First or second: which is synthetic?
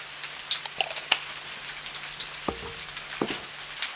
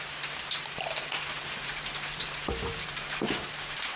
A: second